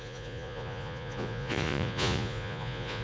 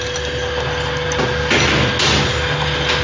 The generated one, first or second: first